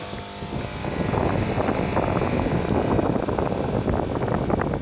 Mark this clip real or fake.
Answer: real